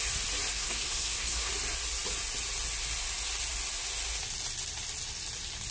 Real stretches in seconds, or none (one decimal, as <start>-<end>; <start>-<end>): 0.0-0.5; 1.5-5.7